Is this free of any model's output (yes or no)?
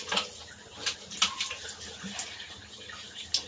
yes